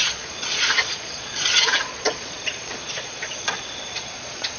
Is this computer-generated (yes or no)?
yes